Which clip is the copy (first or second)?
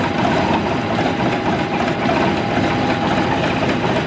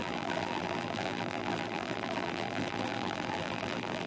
second